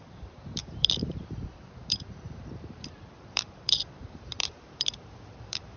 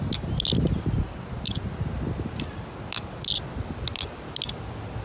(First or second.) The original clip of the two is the second